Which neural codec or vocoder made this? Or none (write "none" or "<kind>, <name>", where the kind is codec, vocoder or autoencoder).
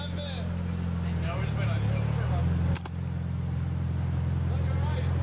none